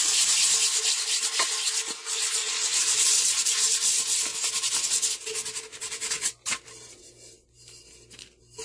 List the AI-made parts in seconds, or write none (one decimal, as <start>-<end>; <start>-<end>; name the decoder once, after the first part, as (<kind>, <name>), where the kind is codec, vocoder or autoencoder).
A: 2.4-3.4 (vocoder, WaveNeXt); 5.8-6.3